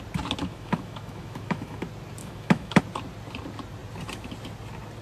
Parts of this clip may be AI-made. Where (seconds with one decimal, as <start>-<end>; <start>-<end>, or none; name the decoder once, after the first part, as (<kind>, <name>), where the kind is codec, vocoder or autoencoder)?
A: 0.4-1.8 (autoencoder, DAC-VAE); 2.2-2.8